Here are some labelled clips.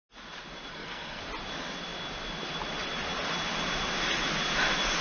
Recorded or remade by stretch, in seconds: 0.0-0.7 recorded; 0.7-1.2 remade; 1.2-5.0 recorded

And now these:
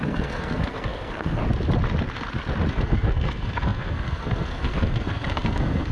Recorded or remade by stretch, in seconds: 0.0-1.4 remade; 1.4-2.7 recorded; 2.7-5.9 remade

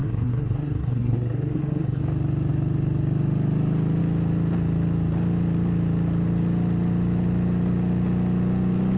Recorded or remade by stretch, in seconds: 0.0-2.0 remade; 2.0-9.0 recorded

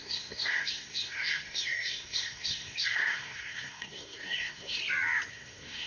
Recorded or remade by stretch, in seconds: 0.0-4.8 remade; 4.8-5.3 recorded; 5.3-5.9 remade

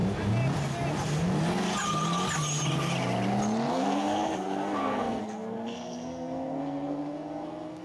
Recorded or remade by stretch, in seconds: 0.0-3.7 recorded; 3.7-7.8 remade

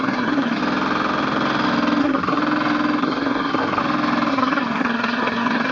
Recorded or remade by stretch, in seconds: 0.0-0.6 remade; 0.6-2.0 recorded; 2.0-2.4 remade; 2.4-3.0 recorded; 3.0-3.8 remade; 3.8-4.3 recorded; 4.3-5.7 remade

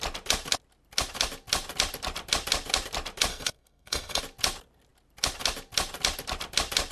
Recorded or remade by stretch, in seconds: 0.0-3.3 recorded; 3.3-4.2 remade; 4.2-6.9 recorded